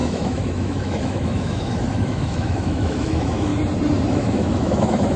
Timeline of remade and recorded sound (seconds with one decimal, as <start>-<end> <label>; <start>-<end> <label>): 0.0-3.5 remade; 3.5-4.1 recorded; 4.1-5.2 remade